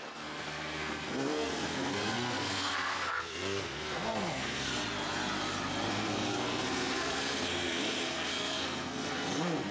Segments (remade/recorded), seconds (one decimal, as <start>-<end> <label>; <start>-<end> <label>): 0.0-4.7 remade; 4.7-5.9 recorded; 5.9-9.7 remade

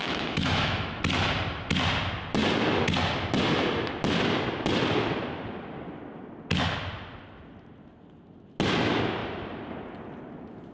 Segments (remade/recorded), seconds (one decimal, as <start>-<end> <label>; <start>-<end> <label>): 0.0-1.0 remade; 1.0-10.7 recorded

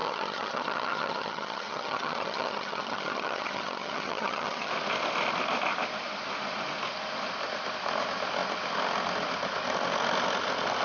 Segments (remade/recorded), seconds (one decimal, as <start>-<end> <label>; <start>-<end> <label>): 0.0-4.7 remade; 4.7-10.8 recorded

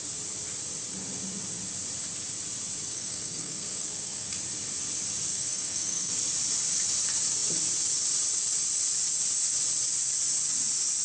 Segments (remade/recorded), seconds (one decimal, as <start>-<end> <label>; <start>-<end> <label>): 0.0-2.9 recorded; 2.9-4.3 remade; 4.3-5.3 recorded; 5.3-6.1 remade; 6.1-11.0 recorded

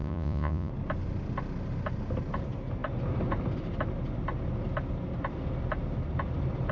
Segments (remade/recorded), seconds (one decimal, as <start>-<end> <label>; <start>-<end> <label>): 0.0-0.7 remade; 0.7-6.7 recorded